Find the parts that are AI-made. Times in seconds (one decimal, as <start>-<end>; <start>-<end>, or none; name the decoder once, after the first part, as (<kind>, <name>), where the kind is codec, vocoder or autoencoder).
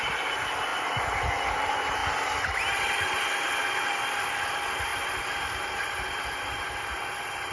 none